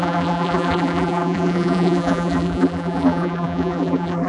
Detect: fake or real fake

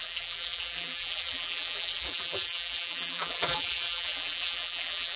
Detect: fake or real fake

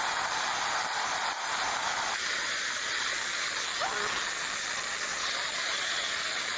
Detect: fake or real real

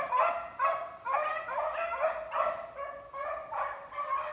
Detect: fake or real real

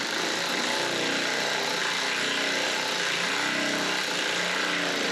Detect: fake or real real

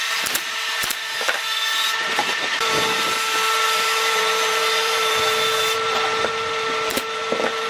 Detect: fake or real fake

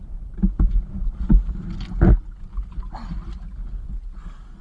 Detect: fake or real real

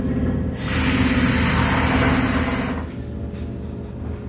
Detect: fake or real real